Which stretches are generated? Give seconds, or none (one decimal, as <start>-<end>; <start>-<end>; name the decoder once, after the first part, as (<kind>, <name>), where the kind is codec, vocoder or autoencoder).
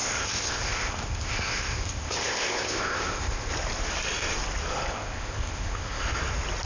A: 0.0-3.5 (codec, ZipCodec); 4.9-6.0